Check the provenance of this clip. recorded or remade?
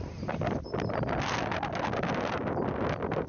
recorded